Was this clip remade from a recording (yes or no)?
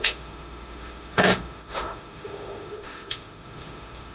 yes